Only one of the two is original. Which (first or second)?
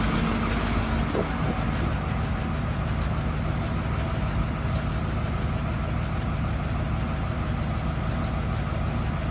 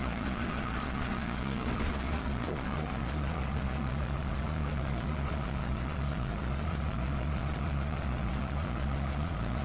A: first